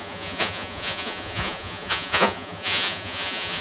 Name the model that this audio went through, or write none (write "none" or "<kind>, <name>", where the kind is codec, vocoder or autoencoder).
vocoder, Vocos